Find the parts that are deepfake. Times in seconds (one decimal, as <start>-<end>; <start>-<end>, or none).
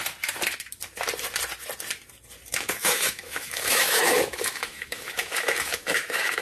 2.5-6.4